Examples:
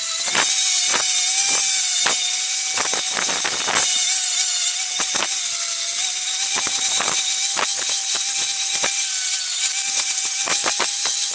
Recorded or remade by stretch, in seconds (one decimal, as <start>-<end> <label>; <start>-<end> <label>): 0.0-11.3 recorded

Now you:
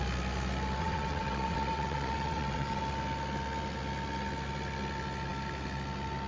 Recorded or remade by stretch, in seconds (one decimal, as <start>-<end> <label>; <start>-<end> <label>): 0.0-0.8 recorded; 0.8-2.8 remade; 2.8-6.3 recorded

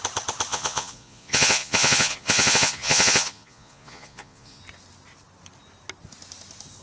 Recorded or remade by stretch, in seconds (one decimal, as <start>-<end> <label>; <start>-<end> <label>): 0.0-0.5 recorded; 0.5-4.6 remade; 4.6-6.8 recorded

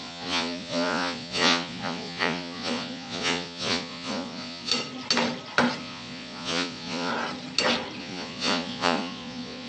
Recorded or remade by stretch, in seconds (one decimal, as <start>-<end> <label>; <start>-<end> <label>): 0.0-4.7 remade; 4.7-5.8 recorded; 5.8-7.1 remade; 7.1-8.0 recorded; 8.0-9.7 remade

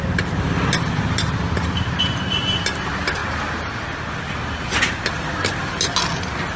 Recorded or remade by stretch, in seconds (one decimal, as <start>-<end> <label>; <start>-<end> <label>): 0.0-6.6 recorded

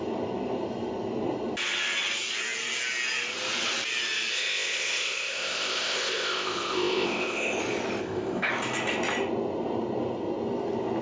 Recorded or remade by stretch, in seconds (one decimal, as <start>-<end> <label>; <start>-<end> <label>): 0.0-4.3 recorded; 4.3-7.6 remade; 7.6-8.0 recorded; 8.0-8.5 remade; 8.5-11.0 recorded

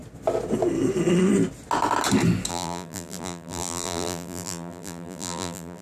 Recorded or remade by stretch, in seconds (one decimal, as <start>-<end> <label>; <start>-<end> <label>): 0.0-2.5 recorded; 2.5-5.8 remade